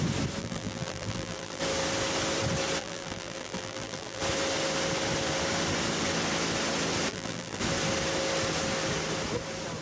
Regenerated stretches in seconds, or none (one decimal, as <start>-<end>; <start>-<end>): 0.4-1.6; 2.8-4.2; 7.1-7.6